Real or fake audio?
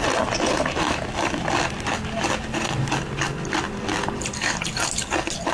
real